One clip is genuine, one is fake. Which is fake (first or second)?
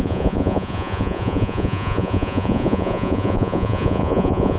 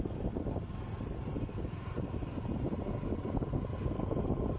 first